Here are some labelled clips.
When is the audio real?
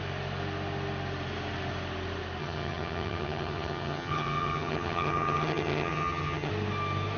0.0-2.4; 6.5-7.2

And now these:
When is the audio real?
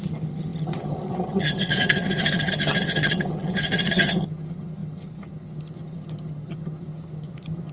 none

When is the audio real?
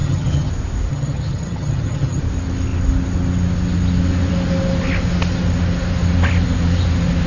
0.5-0.9; 2.2-7.3